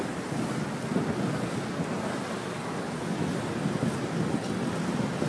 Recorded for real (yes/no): yes